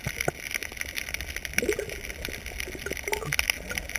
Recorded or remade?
recorded